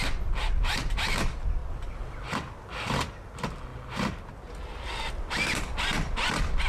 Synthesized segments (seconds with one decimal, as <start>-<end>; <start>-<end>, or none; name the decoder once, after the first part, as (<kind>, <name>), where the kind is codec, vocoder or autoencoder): none